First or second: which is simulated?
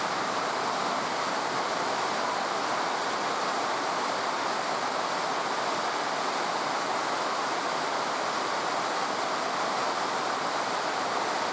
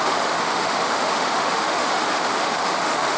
second